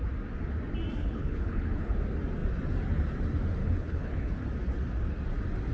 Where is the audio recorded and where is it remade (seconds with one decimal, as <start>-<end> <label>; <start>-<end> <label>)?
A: 0.0-1.0 recorded; 1.0-2.0 remade; 2.0-3.6 recorded; 3.6-4.4 remade; 4.4-5.7 recorded